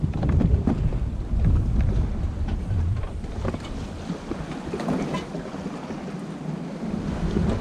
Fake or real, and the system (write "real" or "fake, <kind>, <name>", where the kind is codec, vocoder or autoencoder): real